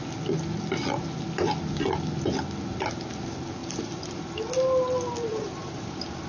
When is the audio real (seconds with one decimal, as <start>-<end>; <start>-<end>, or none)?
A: 0.0-3.6; 4.2-5.3